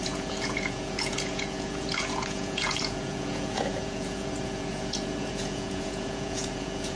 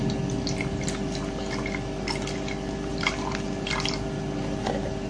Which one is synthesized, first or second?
first